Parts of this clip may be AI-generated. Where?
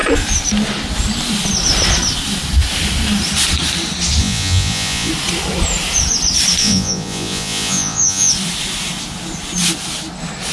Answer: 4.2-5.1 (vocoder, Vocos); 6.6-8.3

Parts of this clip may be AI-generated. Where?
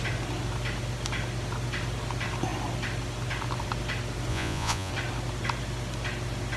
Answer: 4.3-4.9 (vocoder, Vocos)